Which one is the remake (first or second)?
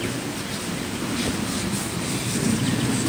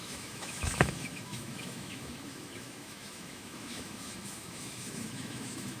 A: second